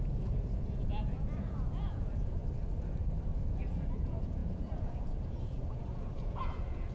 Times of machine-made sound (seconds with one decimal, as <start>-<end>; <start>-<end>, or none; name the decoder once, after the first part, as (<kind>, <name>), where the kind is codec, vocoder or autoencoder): 0.0-2.4 (vocoder, Vocos); 3.5-6.9